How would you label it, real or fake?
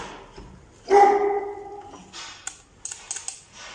real